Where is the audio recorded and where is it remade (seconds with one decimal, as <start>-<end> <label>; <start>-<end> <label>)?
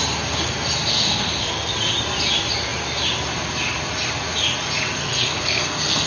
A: 0.0-0.9 recorded; 0.9-1.7 remade; 1.7-5.0 recorded; 5.0-6.1 remade